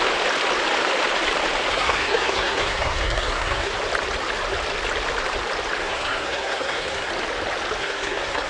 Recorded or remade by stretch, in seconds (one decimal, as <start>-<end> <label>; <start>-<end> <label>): 0.0-1.7 recorded; 1.7-3.7 remade; 3.7-5.8 recorded; 5.8-7.1 remade; 7.1-7.8 recorded; 7.8-8.5 remade